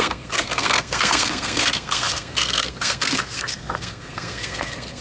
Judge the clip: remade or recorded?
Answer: remade